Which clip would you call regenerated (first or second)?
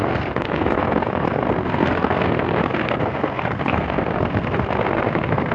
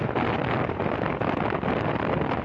first